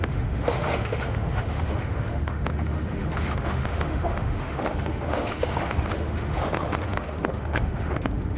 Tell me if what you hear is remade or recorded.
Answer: remade